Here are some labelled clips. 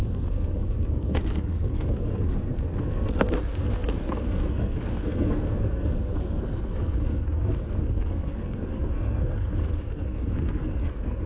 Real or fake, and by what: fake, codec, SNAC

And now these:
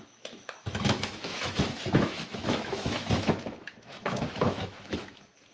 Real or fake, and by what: fake, autoencoder, DAC-VAE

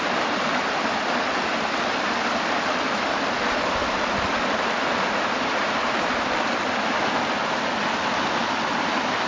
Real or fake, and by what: real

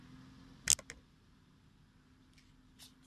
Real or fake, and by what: real